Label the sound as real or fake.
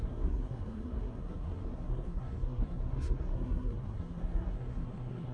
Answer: fake